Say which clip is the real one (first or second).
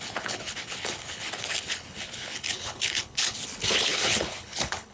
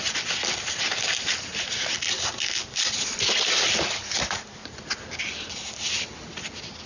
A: second